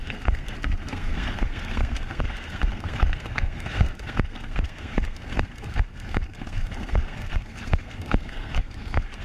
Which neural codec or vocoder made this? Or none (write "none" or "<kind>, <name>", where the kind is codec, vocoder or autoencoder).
codec, SNAC